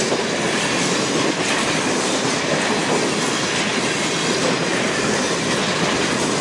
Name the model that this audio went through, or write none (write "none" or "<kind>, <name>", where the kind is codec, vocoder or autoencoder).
none